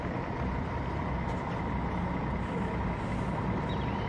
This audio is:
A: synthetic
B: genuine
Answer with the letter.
B